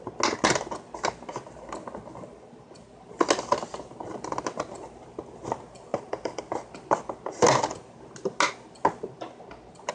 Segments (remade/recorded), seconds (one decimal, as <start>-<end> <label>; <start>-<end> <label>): 0.0-5.9 recorded; 5.9-6.4 remade; 6.4-9.9 recorded